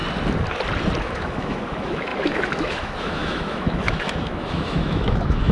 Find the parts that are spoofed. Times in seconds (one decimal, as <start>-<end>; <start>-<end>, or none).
1.0-5.5

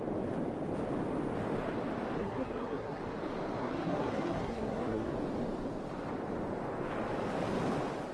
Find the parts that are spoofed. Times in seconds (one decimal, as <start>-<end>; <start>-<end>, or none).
2.2-3.0; 3.6-5.1